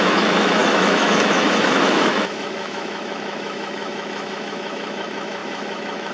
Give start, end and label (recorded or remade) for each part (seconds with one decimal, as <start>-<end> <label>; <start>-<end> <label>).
0.0-6.1 remade